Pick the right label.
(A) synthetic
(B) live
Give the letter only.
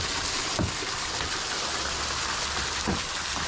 B